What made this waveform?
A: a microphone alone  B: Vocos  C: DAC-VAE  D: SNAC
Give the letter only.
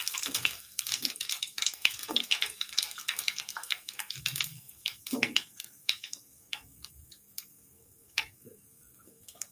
D